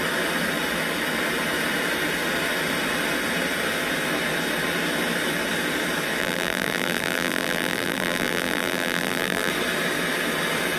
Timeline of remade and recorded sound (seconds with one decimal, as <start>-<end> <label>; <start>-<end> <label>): 0.0-6.2 recorded; 6.2-9.5 remade; 9.5-10.8 recorded